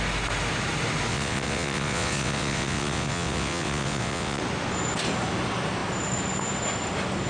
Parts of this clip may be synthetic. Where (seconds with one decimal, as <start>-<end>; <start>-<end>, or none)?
1.1-4.4